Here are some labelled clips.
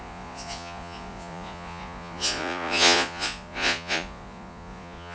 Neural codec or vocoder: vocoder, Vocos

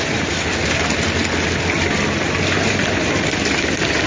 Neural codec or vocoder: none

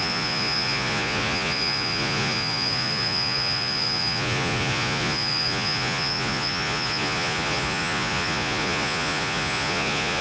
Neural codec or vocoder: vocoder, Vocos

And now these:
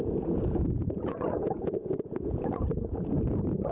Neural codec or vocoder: vocoder, Vocos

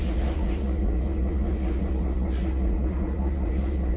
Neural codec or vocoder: vocoder, Vocos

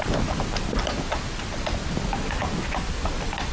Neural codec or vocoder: none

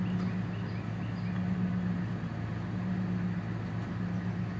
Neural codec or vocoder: none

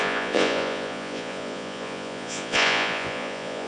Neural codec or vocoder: vocoder, Vocos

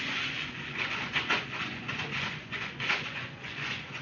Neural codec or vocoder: vocoder, Vocos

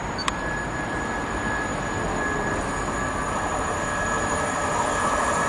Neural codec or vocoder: none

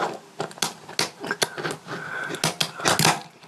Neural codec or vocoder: none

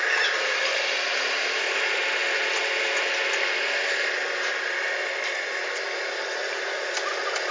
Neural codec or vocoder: none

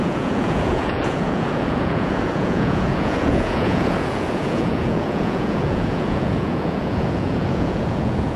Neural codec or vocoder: vocoder, Vocos